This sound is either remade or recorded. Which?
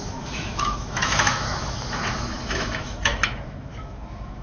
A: remade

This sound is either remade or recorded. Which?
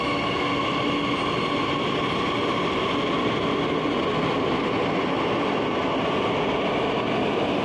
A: recorded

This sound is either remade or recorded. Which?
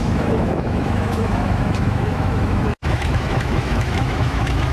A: remade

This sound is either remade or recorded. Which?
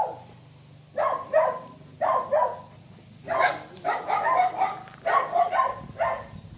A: recorded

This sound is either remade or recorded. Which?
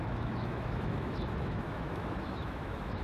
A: remade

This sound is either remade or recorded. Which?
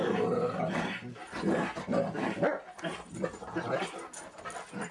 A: recorded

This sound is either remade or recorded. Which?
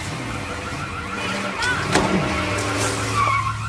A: recorded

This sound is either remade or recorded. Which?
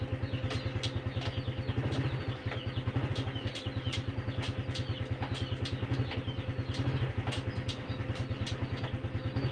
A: recorded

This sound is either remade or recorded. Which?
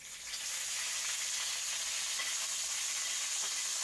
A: recorded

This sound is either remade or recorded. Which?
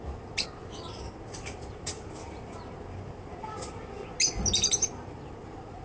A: recorded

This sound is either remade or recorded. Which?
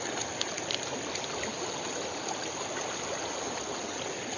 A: recorded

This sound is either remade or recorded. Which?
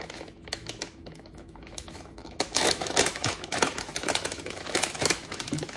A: remade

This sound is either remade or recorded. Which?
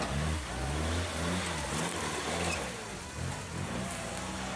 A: recorded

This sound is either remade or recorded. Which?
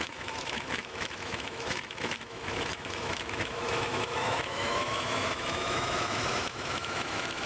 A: remade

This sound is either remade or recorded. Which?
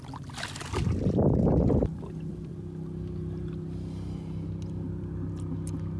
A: recorded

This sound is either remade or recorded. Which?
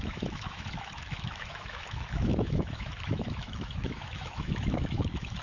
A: remade